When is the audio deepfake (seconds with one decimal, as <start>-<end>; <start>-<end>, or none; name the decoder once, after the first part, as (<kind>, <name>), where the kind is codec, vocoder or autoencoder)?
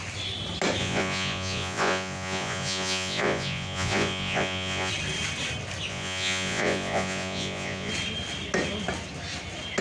0.8-4.9 (vocoder, Vocos); 5.9-7.9